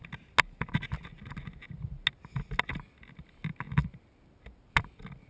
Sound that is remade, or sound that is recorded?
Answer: recorded